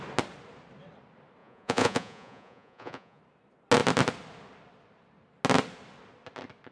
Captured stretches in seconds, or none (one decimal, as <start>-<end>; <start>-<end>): 0.0-1.4; 3.2-6.7